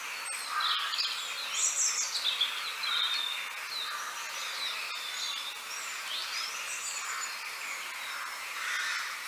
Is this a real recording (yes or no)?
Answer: yes